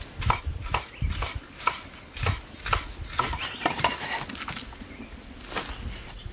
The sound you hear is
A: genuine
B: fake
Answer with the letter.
A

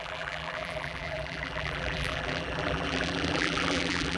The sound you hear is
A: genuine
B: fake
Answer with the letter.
B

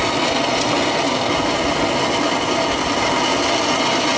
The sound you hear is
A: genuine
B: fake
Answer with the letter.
A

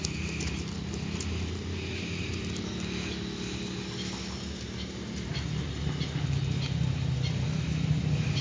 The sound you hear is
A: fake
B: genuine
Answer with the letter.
B